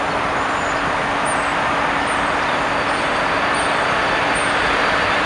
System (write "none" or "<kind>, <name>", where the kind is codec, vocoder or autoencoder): none